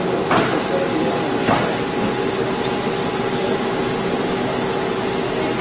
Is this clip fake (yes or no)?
no